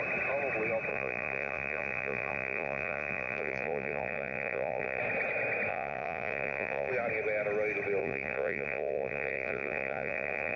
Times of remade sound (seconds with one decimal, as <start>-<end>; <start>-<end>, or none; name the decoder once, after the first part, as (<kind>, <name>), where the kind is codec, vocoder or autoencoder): 0.9-5.0 (vocoder, Vocos); 5.7-6.9; 8.0-10.6